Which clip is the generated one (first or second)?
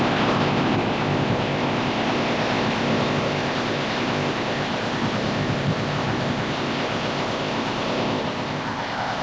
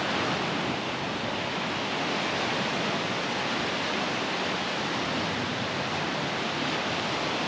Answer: first